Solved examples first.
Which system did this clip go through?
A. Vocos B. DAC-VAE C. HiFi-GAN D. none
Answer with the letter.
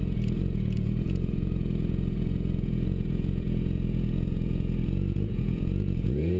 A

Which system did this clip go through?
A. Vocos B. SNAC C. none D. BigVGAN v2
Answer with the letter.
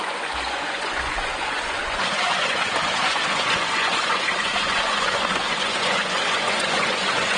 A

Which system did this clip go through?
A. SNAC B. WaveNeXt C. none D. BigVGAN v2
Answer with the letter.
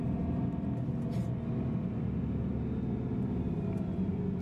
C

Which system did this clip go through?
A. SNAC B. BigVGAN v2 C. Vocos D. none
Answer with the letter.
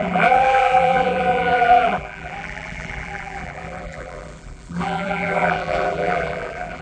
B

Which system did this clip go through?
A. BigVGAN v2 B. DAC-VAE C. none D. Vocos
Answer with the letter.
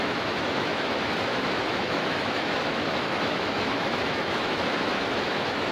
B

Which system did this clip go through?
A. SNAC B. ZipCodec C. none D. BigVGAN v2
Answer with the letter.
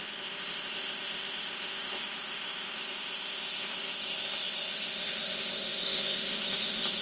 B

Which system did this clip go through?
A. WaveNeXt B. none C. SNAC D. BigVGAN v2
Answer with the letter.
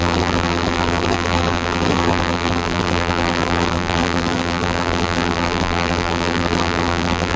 D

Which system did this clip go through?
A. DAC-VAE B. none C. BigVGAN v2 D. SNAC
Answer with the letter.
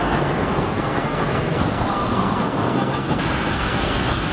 D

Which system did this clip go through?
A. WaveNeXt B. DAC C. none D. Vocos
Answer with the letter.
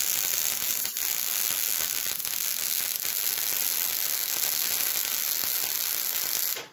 C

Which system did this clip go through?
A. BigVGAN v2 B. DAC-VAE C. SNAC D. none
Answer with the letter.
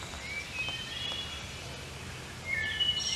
D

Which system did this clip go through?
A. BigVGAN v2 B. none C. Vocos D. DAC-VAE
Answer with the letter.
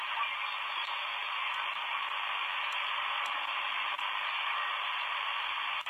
B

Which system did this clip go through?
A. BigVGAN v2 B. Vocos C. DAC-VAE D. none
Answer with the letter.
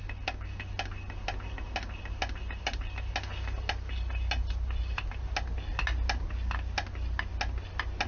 D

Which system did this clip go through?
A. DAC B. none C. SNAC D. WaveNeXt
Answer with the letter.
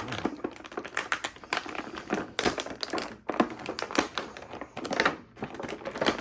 B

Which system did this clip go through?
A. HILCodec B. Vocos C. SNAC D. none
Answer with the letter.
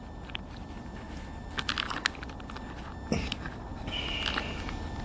D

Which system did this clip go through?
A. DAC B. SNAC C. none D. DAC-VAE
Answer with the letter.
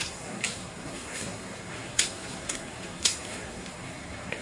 B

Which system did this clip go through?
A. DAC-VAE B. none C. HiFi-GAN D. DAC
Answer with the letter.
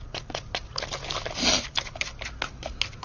B